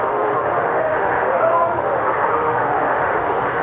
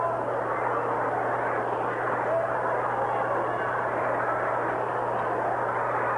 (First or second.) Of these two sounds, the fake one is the first